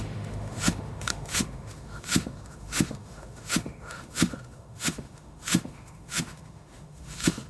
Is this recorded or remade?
remade